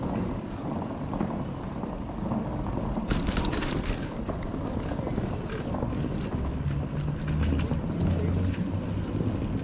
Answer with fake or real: real